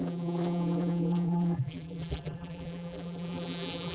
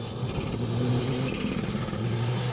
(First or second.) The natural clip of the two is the second